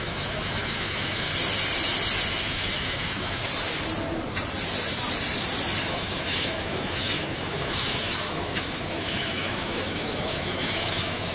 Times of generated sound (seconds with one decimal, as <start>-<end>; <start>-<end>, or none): 0.0-1.3; 2.3-3.4; 5.8-11.3